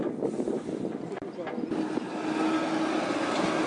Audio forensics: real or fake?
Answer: real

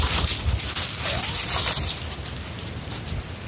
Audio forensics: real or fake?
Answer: real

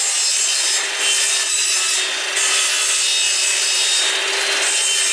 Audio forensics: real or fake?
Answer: real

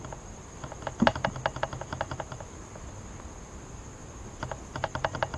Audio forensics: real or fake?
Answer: real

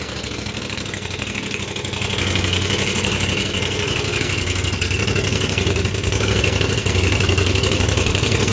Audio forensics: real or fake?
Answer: fake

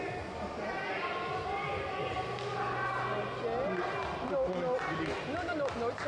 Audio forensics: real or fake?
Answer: real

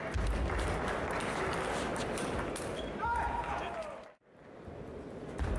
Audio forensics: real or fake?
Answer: real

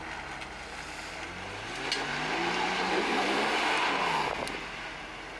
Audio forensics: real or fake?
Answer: real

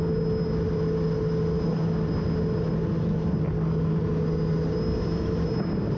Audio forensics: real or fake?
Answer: real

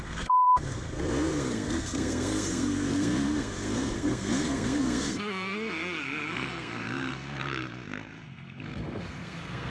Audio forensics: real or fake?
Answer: fake